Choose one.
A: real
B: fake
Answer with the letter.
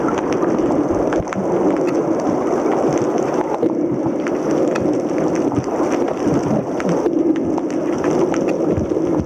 A